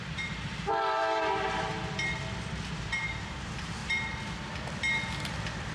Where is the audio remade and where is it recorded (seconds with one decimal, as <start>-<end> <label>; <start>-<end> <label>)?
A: 0.0-1.7 remade; 1.7-2.7 recorded; 2.7-3.8 remade; 3.8-5.3 recorded; 5.3-5.7 remade

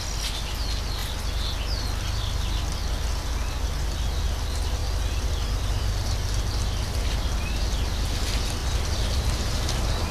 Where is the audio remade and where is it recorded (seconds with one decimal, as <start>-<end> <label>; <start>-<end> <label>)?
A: 0.0-2.8 recorded; 2.8-3.3 remade; 3.3-8.6 recorded; 8.6-10.1 remade

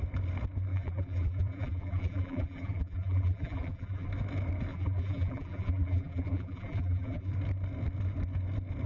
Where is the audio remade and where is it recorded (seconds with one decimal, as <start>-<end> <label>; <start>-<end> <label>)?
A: 0.0-0.7 recorded; 0.7-4.1 remade; 4.1-4.7 recorded; 4.7-7.3 remade; 7.3-8.9 recorded

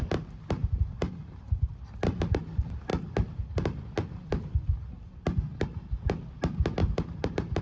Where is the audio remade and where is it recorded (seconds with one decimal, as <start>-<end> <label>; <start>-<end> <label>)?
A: 0.0-0.6 recorded; 0.6-1.5 remade; 1.5-6.8 recorded; 6.8-7.6 remade

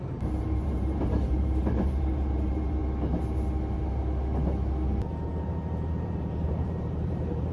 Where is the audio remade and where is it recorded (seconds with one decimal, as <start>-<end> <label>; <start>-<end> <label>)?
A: 0.0-2.8 remade; 2.8-5.9 recorded; 5.9-7.5 remade

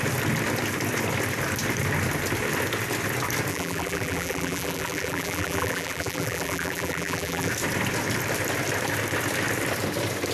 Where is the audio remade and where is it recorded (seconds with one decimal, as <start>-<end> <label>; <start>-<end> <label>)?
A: 0.0-3.5 recorded; 3.5-7.5 remade; 7.5-10.3 recorded

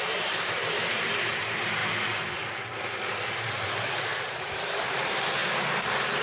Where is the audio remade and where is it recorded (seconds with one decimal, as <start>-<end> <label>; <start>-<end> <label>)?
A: 0.0-1.8 remade; 1.8-4.0 recorded; 4.0-5.4 remade; 5.4-6.2 recorded

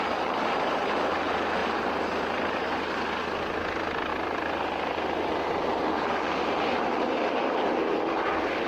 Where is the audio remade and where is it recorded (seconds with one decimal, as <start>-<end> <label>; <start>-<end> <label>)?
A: 0.0-1.6 recorded; 1.6-2.7 remade; 2.7-4.1 recorded; 4.1-8.7 remade